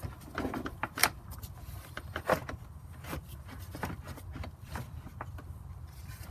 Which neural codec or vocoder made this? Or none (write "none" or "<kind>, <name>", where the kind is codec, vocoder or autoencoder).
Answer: vocoder, BigVGAN v2